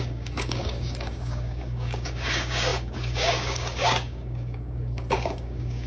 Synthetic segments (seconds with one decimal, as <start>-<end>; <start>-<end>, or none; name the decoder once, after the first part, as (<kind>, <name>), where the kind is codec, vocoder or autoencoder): 0.0-5.9 (codec, DAC)